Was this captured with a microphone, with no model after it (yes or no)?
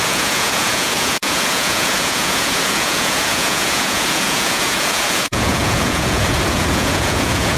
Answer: no